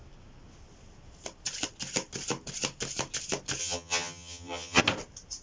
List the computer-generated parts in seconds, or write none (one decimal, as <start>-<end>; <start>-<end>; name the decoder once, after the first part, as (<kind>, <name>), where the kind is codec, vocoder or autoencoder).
3.6-4.8 (vocoder, HiFi-GAN)